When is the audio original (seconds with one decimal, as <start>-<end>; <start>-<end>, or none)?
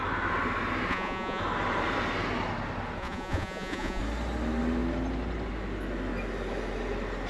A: 0.0-0.9; 1.4-3.0; 4.0-7.3